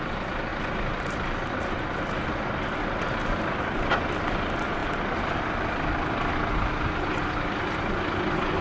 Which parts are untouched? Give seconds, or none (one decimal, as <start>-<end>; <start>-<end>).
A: 0.0-8.6

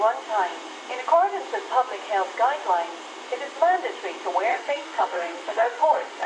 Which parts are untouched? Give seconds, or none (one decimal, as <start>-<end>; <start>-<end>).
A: 0.0-4.5

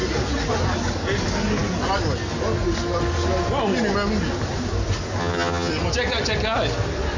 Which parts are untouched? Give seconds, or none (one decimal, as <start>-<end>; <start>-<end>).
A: 0.0-5.2; 5.7-7.2

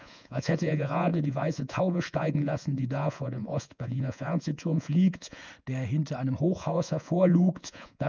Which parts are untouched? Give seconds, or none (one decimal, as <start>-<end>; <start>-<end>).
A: 5.4-6.4

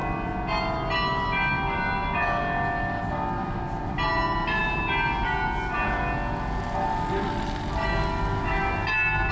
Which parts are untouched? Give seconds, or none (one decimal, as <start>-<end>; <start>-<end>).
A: 0.0-9.3